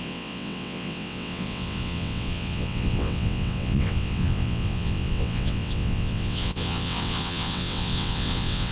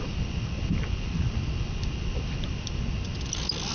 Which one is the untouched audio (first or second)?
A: second